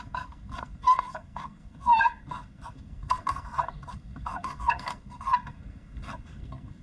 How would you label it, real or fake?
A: fake